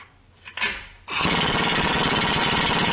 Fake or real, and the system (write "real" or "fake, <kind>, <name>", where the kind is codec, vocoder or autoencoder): real